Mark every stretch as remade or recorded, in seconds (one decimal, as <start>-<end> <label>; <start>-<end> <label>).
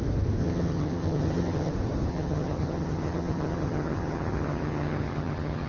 0.0-0.4 recorded; 0.4-1.7 remade; 1.7-2.1 recorded; 2.1-5.7 remade